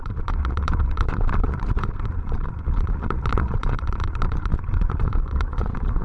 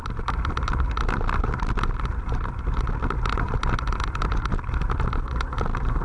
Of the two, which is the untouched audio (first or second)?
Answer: second